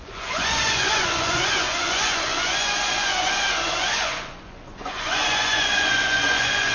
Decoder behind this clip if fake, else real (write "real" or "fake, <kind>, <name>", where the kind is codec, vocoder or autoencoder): fake, vocoder, Vocos